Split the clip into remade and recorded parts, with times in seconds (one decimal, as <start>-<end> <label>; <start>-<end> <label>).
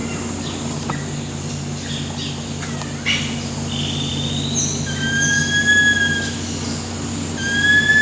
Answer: 0.0-8.0 recorded